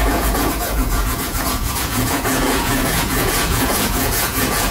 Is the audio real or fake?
fake